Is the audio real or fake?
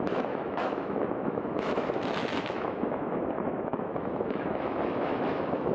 fake